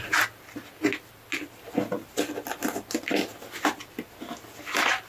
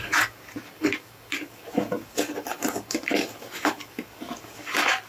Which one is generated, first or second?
second